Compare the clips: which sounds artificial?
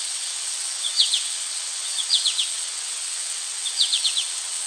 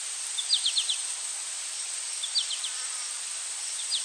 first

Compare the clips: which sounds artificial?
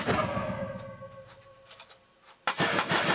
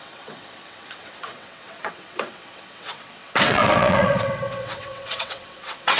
second